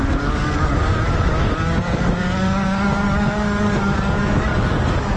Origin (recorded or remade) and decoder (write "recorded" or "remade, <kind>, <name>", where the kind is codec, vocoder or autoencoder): remade, codec, DAC